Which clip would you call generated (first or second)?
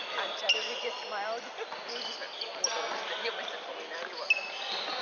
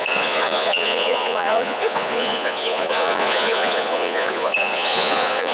second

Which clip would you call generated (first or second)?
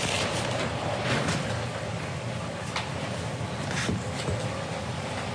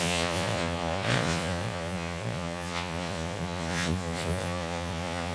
second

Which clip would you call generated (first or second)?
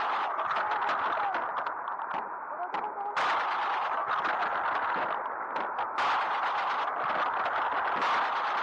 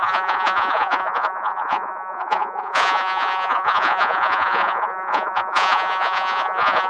second